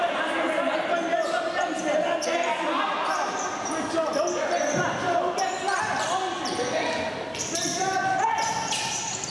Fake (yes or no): yes